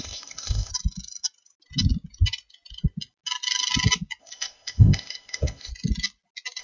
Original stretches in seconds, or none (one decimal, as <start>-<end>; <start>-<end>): 0.7-4.2; 5.7-6.6